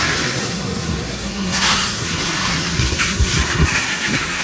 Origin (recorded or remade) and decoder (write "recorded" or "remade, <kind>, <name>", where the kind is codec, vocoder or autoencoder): remade, codec, SNAC